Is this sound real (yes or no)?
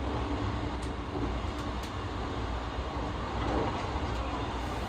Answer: no